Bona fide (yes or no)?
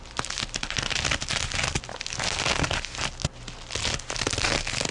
yes